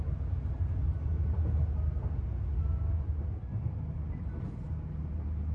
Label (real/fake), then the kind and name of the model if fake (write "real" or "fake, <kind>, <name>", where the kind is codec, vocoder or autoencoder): real